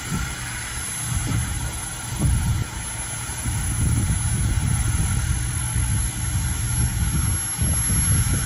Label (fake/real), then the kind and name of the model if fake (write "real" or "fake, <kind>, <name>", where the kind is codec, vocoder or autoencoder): real